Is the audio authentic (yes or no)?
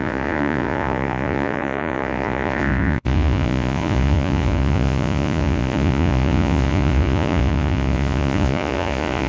no